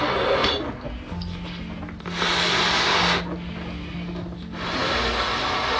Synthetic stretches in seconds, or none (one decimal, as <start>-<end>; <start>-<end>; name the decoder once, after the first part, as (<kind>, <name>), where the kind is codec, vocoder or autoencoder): none